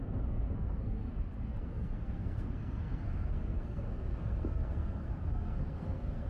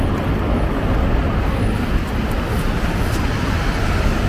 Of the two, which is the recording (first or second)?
second